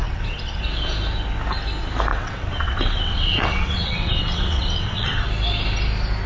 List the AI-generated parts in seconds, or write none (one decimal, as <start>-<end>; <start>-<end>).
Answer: 0.0-0.6; 2.1-5.2